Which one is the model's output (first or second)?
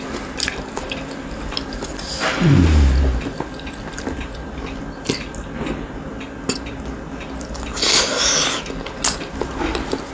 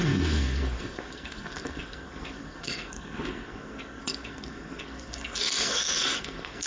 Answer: second